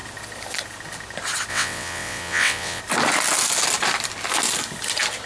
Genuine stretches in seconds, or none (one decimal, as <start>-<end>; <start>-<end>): 0.0-1.5; 2.8-5.3